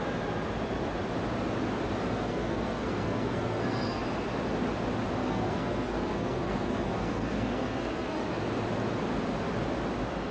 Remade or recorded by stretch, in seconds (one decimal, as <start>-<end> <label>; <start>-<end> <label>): 0.0-2.0 recorded; 2.0-4.0 remade; 4.0-5.2 recorded; 5.2-8.3 remade; 8.3-10.3 recorded